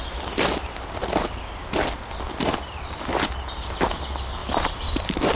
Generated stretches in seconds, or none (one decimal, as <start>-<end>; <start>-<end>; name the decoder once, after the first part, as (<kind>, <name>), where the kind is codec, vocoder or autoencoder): 4.4-5.4 (vocoder, BigVGAN v2)